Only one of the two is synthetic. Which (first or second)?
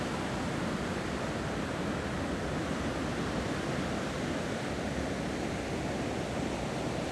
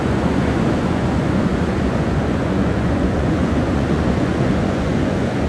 second